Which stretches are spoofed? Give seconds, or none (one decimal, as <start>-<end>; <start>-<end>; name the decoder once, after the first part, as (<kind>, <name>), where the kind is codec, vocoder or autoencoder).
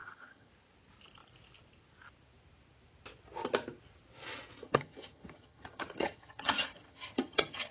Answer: 0.0-0.5 (vocoder, HiFi-GAN); 4.6-7.7